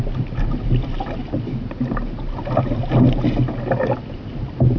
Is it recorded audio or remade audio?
recorded